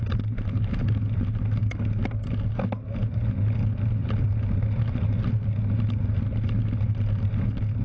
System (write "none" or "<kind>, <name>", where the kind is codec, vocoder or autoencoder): none